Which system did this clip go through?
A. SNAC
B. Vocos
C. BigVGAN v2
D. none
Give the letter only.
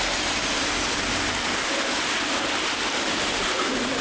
D